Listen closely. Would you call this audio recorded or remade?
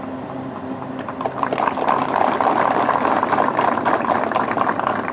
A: remade